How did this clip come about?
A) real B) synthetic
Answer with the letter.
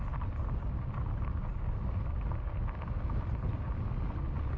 A